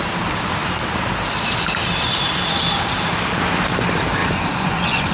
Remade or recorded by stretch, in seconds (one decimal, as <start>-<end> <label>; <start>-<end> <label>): 0.0-4.2 recorded; 4.2-5.1 remade